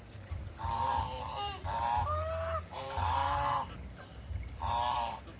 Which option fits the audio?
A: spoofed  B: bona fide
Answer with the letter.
A